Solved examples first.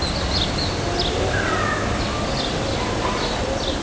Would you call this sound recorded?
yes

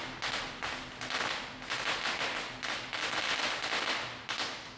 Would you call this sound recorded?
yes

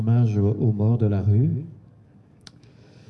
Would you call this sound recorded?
no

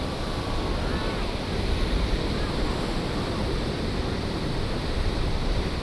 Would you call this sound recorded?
no